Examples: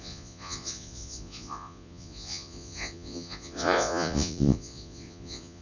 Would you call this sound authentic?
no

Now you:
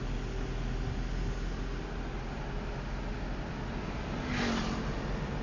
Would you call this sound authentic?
yes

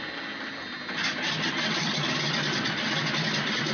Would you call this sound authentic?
yes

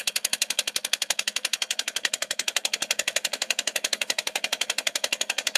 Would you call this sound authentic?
no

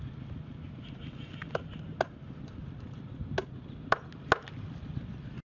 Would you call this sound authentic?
yes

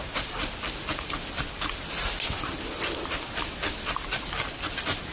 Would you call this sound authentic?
yes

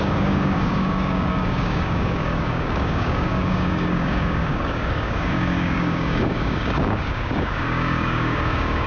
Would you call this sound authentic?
no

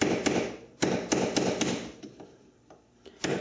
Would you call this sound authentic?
yes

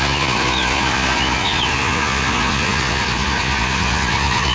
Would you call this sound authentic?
no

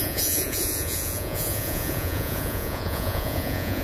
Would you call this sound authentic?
no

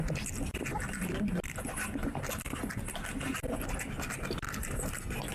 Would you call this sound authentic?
yes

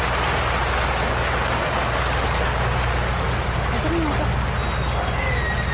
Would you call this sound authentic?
yes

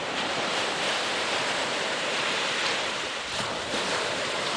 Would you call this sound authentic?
no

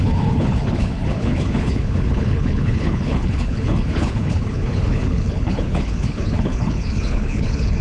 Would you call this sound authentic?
no